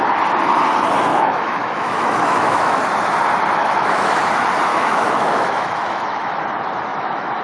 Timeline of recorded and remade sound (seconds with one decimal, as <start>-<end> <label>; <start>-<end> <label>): 0.0-1.1 recorded; 1.1-2.8 remade; 2.8-3.6 recorded; 3.6-4.2 remade; 4.2-4.7 recorded; 4.7-6.4 remade; 6.4-6.9 recorded; 6.9-7.4 remade